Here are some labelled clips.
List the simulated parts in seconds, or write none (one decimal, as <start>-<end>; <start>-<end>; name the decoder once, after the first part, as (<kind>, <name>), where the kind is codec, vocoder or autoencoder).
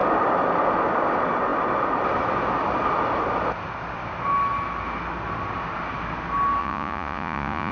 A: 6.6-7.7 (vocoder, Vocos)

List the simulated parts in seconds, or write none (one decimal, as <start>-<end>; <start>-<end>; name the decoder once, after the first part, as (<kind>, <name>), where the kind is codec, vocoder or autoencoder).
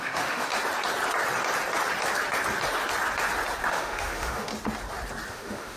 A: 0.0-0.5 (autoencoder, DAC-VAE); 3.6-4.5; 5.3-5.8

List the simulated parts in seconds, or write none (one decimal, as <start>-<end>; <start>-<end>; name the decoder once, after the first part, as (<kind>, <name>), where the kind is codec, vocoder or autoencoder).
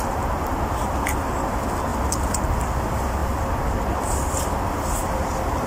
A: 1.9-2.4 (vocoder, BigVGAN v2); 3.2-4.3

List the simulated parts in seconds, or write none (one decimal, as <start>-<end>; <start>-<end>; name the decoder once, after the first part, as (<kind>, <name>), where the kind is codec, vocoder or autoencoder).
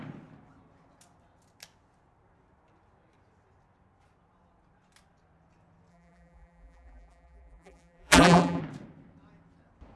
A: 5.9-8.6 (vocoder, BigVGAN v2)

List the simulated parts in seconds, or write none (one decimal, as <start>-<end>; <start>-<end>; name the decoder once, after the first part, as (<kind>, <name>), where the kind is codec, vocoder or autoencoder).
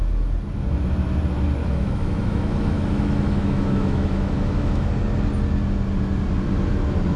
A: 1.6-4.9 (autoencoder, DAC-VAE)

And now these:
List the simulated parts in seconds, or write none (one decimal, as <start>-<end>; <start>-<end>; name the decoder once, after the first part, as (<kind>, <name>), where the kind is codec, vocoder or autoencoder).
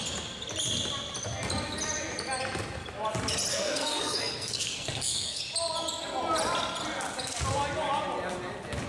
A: 3.5-5.4 (codec, SNAC)